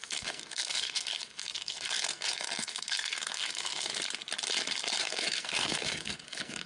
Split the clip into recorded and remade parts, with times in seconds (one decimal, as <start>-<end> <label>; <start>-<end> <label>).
0.0-3.9 remade; 3.9-5.0 recorded; 5.0-6.7 remade